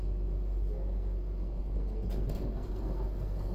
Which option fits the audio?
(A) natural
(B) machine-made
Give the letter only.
B